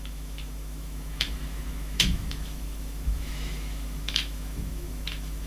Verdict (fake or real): fake